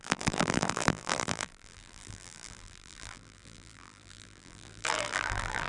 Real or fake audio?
fake